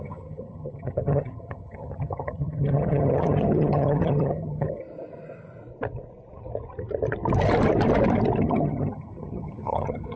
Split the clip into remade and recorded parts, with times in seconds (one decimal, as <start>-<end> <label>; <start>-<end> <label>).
0.0-4.8 remade; 4.8-8.4 recorded; 8.4-10.2 remade